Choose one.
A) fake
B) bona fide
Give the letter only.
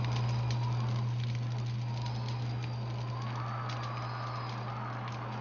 B